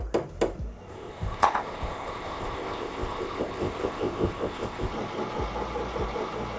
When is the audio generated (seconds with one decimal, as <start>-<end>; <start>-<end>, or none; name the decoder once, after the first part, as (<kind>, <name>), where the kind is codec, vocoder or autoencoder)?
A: 0.9-4.9 (codec, ZipCodec)